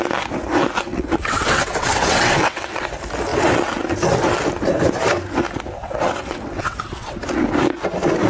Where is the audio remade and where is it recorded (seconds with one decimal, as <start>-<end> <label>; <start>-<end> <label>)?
0.0-0.9 recorded; 0.9-2.8 remade; 2.8-5.8 recorded; 5.8-7.2 remade; 7.2-8.3 recorded